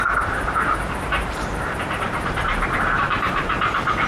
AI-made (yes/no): yes